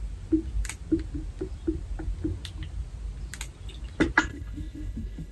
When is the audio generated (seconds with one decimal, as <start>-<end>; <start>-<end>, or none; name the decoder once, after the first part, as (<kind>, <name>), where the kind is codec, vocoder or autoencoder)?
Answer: 4.2-5.3 (codec, HILCodec)